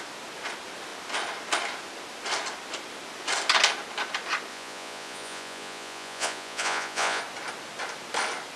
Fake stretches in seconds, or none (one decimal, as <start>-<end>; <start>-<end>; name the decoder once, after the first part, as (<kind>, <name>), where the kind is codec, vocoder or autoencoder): 4.5-7.2 (vocoder, Vocos)